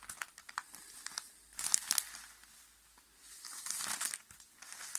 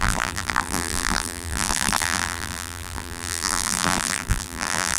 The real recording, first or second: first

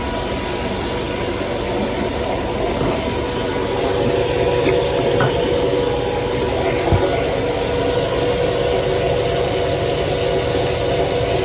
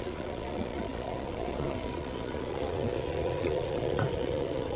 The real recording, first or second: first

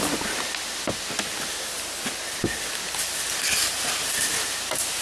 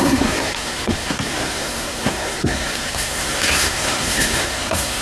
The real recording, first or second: first